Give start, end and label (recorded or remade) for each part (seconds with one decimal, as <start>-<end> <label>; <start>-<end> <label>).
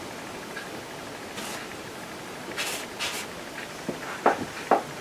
0.0-5.0 recorded